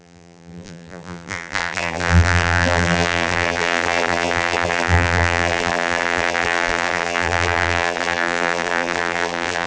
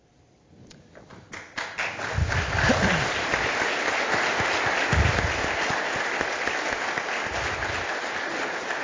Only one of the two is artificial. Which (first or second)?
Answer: first